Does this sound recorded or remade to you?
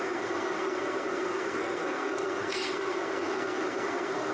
remade